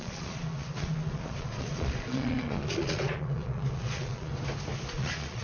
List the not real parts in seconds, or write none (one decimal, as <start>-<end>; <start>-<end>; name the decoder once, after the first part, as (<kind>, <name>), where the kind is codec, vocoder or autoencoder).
0.0-4.3 (vocoder, Vocos); 4.9-5.4